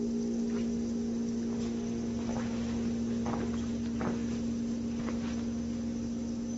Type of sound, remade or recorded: recorded